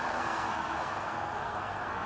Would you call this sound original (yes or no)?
no